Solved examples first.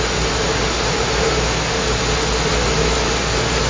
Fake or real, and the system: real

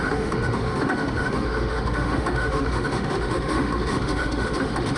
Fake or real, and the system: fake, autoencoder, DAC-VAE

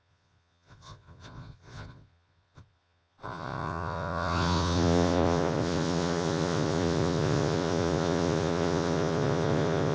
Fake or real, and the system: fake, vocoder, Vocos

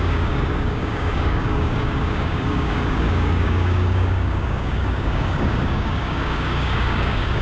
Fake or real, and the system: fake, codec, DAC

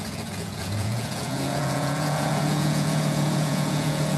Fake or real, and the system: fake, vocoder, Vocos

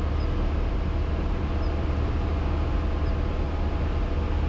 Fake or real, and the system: real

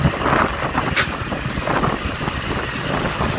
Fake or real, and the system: real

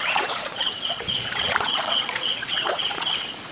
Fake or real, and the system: fake, vocoder, Vocos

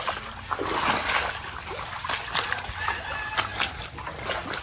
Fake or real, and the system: real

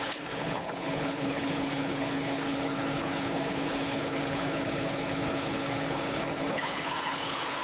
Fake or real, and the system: fake, codec, HILCodec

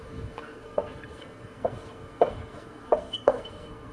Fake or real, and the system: fake, codec, SNAC